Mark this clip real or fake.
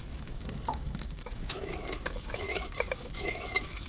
fake